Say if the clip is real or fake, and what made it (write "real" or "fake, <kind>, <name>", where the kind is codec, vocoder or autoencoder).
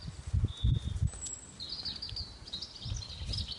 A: real